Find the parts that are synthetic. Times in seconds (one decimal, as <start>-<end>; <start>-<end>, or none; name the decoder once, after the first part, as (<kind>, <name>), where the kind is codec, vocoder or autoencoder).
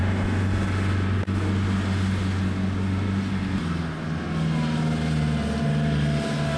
none